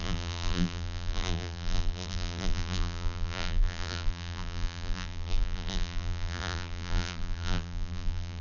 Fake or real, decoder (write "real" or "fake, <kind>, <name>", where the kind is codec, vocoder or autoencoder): fake, vocoder, BigVGAN v2